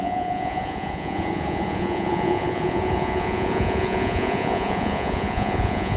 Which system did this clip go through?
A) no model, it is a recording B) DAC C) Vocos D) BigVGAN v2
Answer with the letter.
C